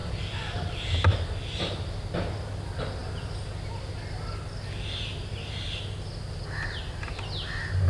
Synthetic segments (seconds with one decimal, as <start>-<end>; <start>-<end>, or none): none